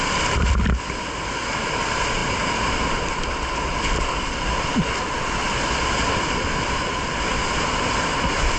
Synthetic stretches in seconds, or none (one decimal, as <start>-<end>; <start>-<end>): none

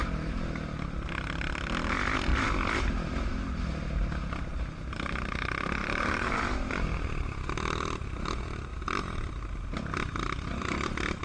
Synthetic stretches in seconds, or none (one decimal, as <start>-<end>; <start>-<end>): 5.8-6.7

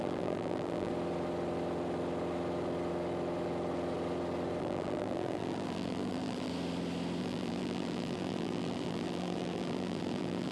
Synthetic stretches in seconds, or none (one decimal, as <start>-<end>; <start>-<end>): 0.0-0.9; 4.6-6.5; 7.2-10.5